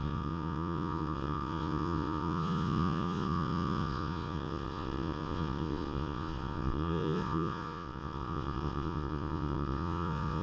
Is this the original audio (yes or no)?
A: no